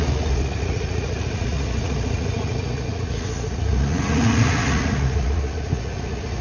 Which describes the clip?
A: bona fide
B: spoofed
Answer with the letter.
B